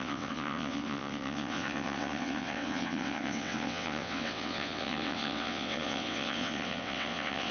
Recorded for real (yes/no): no